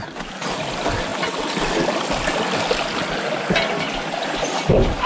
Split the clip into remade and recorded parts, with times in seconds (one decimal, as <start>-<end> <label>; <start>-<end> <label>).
0.0-5.1 recorded